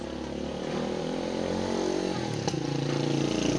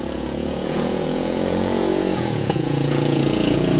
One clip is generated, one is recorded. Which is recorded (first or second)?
first